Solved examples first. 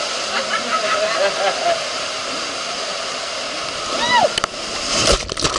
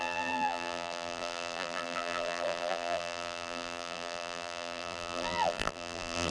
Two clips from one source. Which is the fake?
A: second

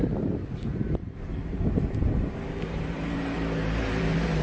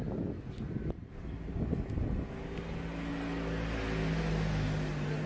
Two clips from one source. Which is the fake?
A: first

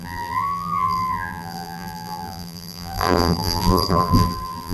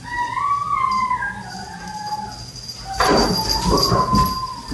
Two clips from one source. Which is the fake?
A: first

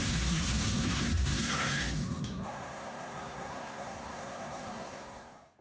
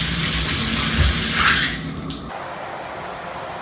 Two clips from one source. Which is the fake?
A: first